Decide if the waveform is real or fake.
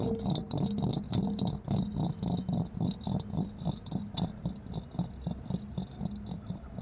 real